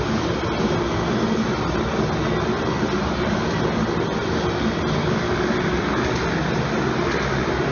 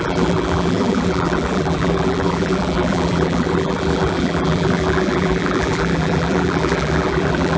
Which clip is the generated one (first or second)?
second